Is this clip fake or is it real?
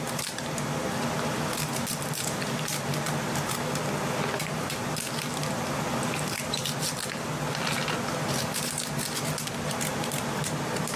real